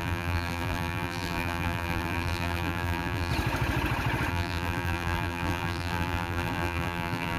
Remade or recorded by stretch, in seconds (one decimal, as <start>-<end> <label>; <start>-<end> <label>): 0.0-3.3 remade; 3.3-4.3 recorded; 4.3-7.4 remade